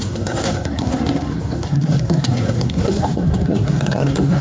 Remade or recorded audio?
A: remade